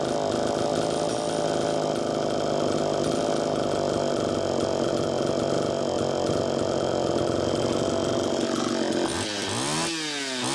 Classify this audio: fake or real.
real